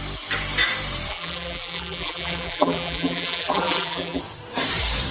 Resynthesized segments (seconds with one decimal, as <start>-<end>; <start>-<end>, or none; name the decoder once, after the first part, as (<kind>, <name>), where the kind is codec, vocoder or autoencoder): 1.1-4.2 (vocoder, BigVGAN v2)